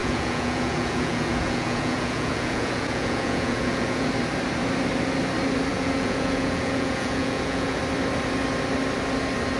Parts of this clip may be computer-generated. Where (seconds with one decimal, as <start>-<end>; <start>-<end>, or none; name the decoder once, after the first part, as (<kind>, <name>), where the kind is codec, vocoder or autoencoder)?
0.0-4.1 (vocoder, Vocos); 5.7-7.8